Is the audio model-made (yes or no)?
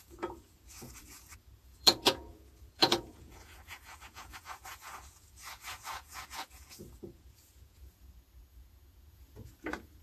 yes